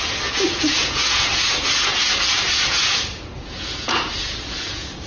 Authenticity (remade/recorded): remade